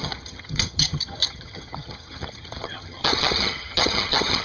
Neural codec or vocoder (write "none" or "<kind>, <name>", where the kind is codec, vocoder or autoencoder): vocoder, HiFi-GAN